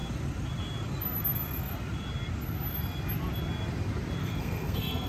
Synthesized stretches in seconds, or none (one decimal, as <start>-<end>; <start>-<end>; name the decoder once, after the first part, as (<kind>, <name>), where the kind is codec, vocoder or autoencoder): 4.2-5.1 (codec, SNAC)